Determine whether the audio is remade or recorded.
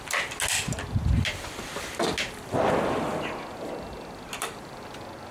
recorded